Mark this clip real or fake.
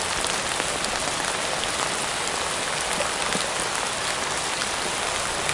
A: real